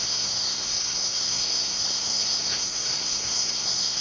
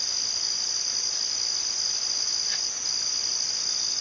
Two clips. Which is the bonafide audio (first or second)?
second